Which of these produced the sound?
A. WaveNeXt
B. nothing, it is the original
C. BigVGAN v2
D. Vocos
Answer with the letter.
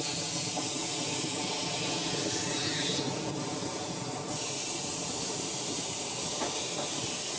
B